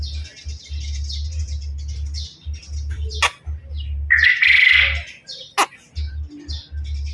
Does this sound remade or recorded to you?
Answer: recorded